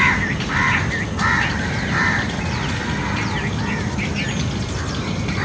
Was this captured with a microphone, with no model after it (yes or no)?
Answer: yes